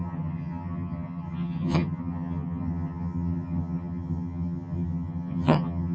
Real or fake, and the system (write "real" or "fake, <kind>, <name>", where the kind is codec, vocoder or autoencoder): fake, vocoder, HiFi-GAN